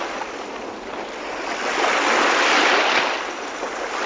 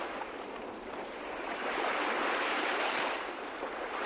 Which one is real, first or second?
first